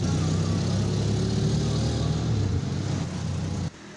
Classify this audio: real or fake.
real